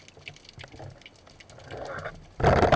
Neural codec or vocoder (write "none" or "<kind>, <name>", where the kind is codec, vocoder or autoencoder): none